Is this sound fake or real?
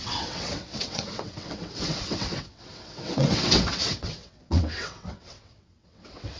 fake